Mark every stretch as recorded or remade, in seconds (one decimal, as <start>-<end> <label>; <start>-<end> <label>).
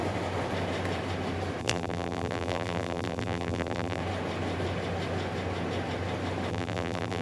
0.0-1.6 recorded; 1.6-4.0 remade; 4.0-6.5 recorded; 6.5-7.2 remade